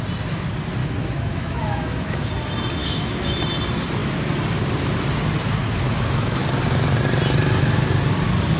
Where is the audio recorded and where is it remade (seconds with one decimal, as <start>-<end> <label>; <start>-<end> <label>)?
0.0-0.8 recorded; 0.8-2.3 remade; 2.3-2.8 recorded; 2.8-3.4 remade; 3.4-5.6 recorded; 5.6-6.4 remade; 6.4-8.6 recorded